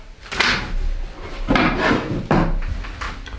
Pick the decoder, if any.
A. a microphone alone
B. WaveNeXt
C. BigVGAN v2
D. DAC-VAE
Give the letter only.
A